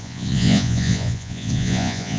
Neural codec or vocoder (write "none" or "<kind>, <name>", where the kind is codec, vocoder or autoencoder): vocoder, Vocos